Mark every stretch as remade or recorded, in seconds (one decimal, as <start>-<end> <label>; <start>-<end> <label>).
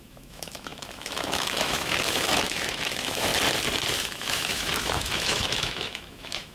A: 0.0-3.3 remade; 3.3-4.0 recorded; 4.0-6.5 remade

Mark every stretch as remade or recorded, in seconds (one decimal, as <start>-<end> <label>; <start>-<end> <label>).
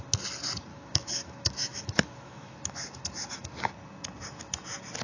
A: 0.0-0.7 recorded; 0.7-3.7 remade; 3.7-5.0 recorded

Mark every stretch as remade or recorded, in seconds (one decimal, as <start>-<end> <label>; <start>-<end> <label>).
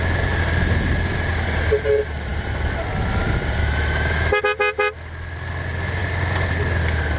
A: 0.0-3.6 recorded; 3.6-4.4 remade; 4.4-7.2 recorded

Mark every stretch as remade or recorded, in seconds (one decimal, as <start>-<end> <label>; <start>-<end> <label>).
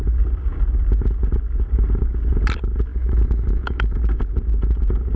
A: 0.0-2.9 recorded; 2.9-4.0 remade; 4.0-5.2 recorded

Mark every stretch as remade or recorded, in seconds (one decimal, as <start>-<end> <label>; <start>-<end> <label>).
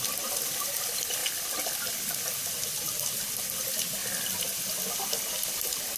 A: 0.0-6.0 recorded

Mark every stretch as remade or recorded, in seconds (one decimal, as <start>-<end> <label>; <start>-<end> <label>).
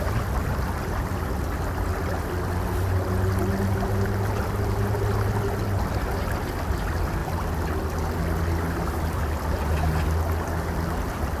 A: 0.0-11.4 recorded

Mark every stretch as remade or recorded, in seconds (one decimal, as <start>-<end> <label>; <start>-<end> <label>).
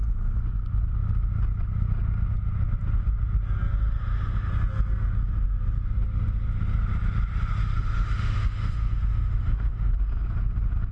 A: 0.0-4.0 recorded; 4.0-4.5 remade; 4.5-7.6 recorded; 7.6-9.9 remade; 9.9-10.9 recorded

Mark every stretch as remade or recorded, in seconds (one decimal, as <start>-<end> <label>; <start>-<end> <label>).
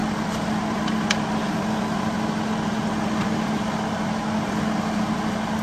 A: 0.0-5.6 recorded